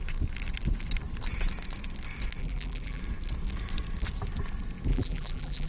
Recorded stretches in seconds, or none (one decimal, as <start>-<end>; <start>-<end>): 0.0-2.4; 3.0-4.9